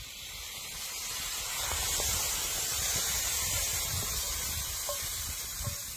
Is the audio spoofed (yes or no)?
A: yes